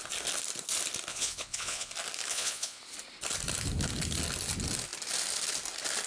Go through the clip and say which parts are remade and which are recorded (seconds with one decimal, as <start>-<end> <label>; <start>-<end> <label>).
0.0-1.1 recorded; 1.1-1.9 remade; 1.9-2.3 recorded; 2.3-2.8 remade; 2.8-6.1 recorded